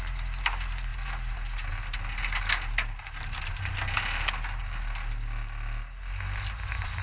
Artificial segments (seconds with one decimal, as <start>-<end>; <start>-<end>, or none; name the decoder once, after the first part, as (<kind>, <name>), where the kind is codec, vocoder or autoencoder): none